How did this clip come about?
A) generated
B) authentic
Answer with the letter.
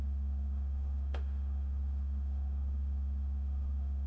A